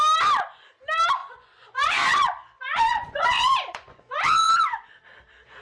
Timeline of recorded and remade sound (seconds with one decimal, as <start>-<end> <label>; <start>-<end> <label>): 0.0-1.2 recorded; 1.2-4.6 remade; 4.6-5.6 recorded